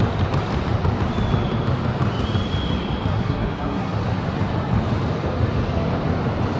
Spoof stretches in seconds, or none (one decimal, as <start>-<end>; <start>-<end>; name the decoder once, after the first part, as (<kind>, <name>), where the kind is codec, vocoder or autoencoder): 3.1-4.0 (codec, SNAC)